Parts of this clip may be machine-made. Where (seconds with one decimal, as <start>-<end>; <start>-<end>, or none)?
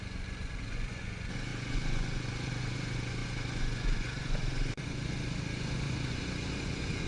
0.0-7.1